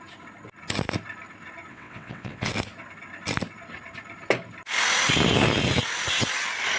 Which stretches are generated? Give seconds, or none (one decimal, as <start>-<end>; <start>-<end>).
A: 1.7-2.5